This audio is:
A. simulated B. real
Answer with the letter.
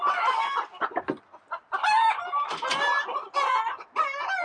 B